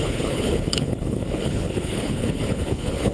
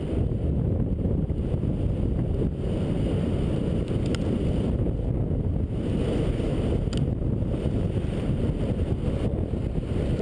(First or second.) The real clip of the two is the second